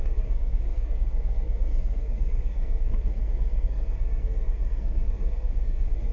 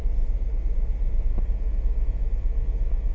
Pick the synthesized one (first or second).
first